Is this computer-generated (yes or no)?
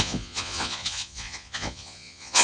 yes